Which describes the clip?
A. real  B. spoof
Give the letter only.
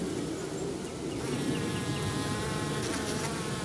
A